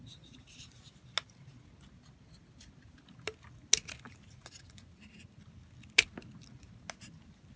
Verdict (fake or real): real